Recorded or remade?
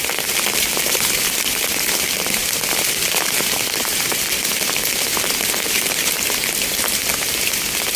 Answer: remade